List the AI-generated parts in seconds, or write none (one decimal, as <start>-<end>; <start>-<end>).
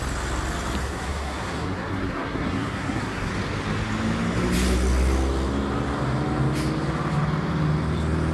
0.8-3.3